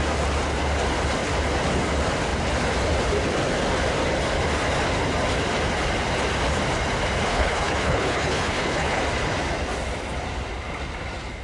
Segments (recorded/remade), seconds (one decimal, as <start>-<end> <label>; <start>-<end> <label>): 0.0-7.3 recorded; 7.3-9.0 remade; 9.0-11.4 recorded